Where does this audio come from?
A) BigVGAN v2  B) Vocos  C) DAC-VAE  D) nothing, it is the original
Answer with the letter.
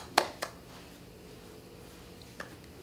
D